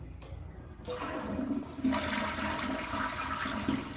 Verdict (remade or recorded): recorded